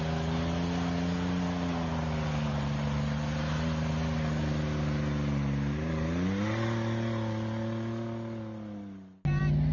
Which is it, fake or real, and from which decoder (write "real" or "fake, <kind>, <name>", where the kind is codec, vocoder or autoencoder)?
real